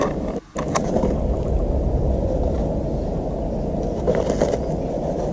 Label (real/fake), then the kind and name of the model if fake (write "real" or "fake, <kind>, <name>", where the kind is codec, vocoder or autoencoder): real